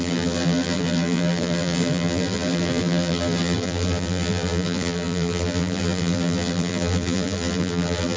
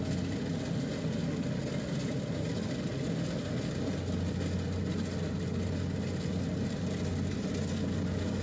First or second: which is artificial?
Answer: first